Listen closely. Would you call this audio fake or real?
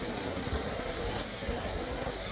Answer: fake